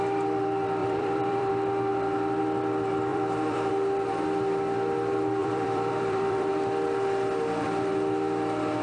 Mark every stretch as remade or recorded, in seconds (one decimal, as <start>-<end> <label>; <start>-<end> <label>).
0.0-0.8 recorded; 0.8-1.5 remade; 1.5-3.1 recorded; 3.1-3.7 remade; 3.7-5.4 recorded; 5.4-6.5 remade; 6.5-8.8 recorded